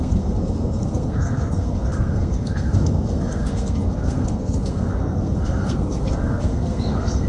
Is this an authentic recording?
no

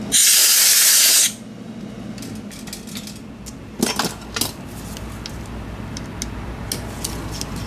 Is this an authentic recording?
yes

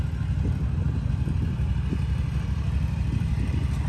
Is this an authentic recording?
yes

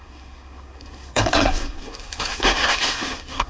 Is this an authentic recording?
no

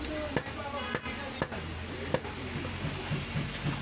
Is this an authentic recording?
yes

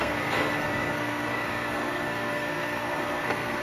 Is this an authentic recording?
no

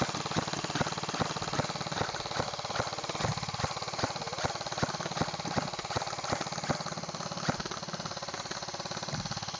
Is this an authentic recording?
yes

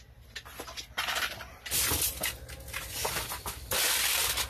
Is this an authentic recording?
yes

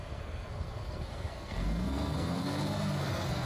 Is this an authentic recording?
no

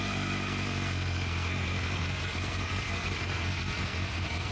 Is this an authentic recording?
no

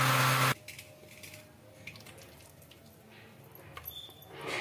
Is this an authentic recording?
yes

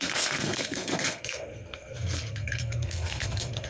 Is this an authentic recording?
no